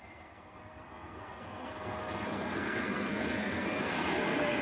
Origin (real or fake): fake